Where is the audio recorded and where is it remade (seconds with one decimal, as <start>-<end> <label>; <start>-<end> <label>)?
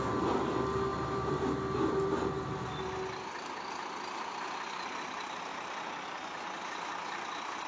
0.0-0.9 recorded; 0.9-1.4 remade; 1.4-7.7 recorded